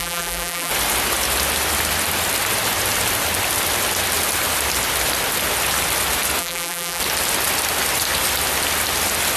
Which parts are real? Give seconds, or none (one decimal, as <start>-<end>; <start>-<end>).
0.7-6.4; 7.0-9.4